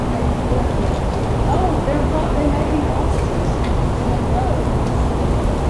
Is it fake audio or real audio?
real